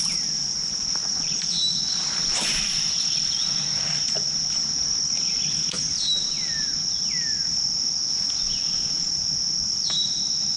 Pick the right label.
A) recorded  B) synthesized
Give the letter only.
A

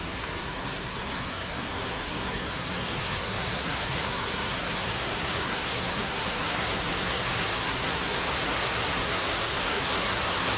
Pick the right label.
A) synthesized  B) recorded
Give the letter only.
A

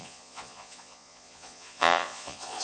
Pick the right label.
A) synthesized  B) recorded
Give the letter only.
A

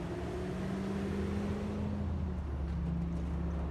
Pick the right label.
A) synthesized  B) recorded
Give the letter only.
B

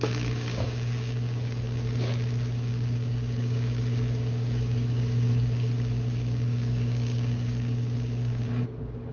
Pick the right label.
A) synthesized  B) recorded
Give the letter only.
A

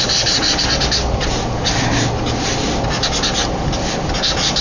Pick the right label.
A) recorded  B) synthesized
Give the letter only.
A